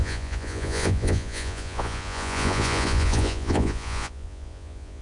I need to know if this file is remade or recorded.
remade